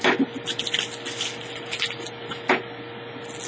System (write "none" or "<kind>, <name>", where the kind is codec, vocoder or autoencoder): none